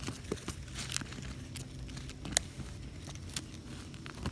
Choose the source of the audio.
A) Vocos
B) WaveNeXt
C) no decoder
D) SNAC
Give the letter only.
C